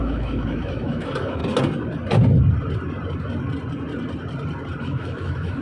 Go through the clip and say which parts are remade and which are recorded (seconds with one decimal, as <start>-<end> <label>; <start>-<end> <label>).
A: 0.0-1.4 remade; 1.4-4.8 recorded; 4.8-5.6 remade

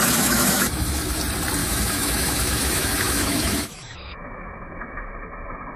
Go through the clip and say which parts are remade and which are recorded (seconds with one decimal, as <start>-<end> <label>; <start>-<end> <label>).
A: 0.0-1.2 remade; 1.2-1.6 recorded; 1.6-5.1 remade; 5.1-5.8 recorded

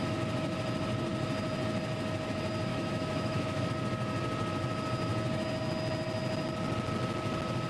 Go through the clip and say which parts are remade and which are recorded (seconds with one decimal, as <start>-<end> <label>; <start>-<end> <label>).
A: 0.0-2.7 recorded; 2.7-3.7 remade; 3.7-7.7 recorded

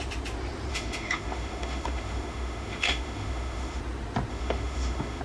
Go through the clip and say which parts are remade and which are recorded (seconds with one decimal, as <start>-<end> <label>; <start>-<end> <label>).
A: 0.0-0.7 recorded; 0.7-3.8 remade; 3.8-4.3 recorded; 4.3-5.2 remade

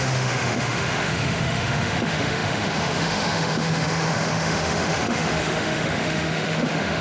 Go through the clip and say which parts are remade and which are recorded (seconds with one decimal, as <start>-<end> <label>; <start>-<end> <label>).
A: 0.0-7.0 remade